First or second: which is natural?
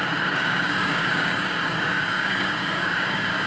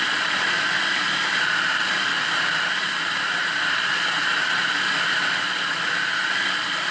second